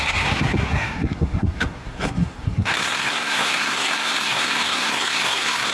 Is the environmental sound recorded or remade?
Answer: remade